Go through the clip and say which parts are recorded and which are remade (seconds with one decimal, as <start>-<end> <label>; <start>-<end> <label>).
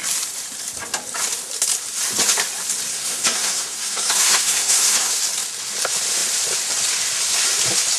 0.0-2.9 recorded; 2.9-5.2 remade; 5.2-8.0 recorded